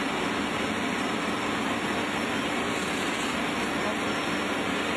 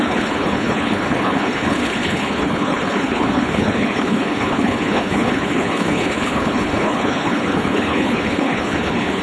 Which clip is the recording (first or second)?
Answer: first